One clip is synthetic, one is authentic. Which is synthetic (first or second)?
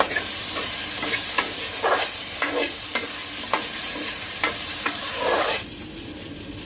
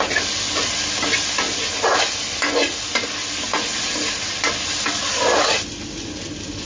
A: first